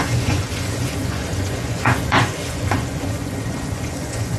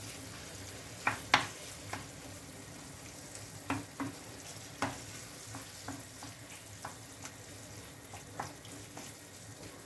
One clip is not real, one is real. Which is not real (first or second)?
first